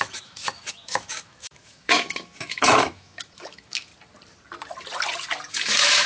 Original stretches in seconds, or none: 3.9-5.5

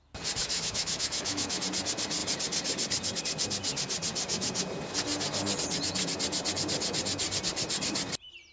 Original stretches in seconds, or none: 0.0-0.4; 1.6-8.5

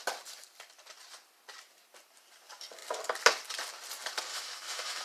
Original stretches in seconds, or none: 0.0-4.3

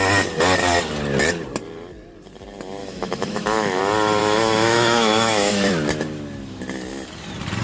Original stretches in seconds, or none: 0.0-2.8; 3.8-4.2; 5.7-7.6